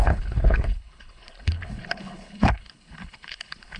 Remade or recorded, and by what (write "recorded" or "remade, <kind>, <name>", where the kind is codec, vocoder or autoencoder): remade, codec, HILCodec